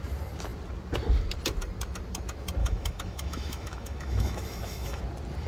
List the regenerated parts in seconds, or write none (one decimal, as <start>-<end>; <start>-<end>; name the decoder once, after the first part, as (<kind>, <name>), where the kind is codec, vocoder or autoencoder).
2.6-5.0 (autoencoder, DAC-VAE)